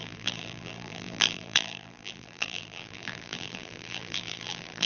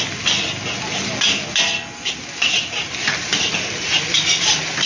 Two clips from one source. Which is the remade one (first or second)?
first